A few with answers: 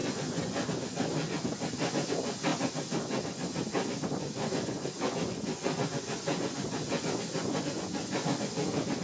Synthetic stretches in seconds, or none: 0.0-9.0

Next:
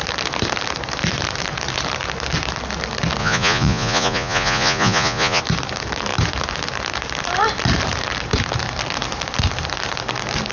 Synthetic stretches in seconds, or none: 3.2-5.4

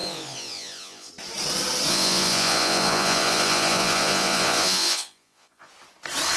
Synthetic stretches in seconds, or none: 0.0-1.1; 1.9-5.7

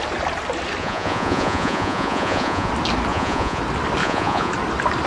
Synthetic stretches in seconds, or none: 0.8-2.7; 3.1-3.6; 4.0-4.5